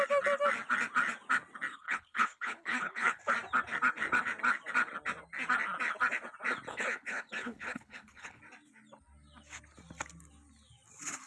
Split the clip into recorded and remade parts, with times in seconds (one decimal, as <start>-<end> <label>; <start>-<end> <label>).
0.0-1.7 recorded; 1.7-3.2 remade; 3.2-6.7 recorded; 6.7-8.4 remade; 8.4-11.3 recorded